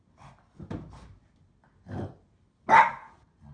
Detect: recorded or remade recorded